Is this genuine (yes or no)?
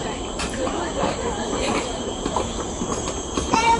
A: no